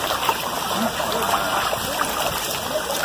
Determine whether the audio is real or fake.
real